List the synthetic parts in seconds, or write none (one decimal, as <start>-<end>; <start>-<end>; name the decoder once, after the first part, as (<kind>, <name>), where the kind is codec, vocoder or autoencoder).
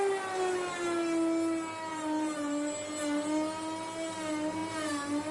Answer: 1.9-2.9 (vocoder, BigVGAN v2)